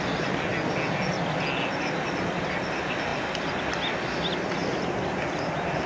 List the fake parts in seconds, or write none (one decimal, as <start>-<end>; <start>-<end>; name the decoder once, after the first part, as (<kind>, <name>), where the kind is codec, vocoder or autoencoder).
none